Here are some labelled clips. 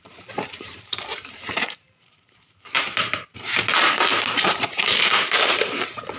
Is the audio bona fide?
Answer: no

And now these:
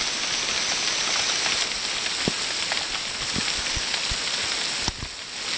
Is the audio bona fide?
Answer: yes